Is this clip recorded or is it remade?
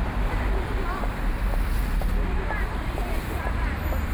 remade